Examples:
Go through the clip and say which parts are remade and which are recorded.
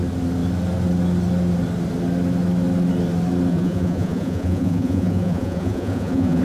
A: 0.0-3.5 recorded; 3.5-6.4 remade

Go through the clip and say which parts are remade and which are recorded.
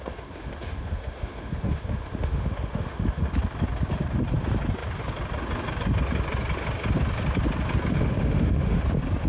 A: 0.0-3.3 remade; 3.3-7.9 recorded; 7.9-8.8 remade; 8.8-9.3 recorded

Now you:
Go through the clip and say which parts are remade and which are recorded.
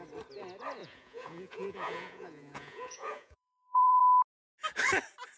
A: 0.0-0.8 recorded; 0.8-4.0 remade; 4.0-5.4 recorded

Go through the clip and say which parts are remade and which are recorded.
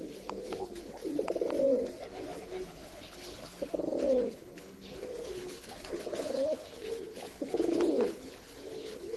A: 0.0-1.0 remade; 1.0-2.4 recorded; 2.4-9.2 remade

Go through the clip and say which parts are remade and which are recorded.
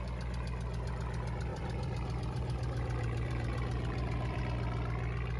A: 0.0-1.5 recorded; 1.5-4.4 remade; 4.4-5.4 recorded